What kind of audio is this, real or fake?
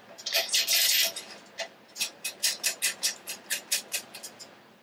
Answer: real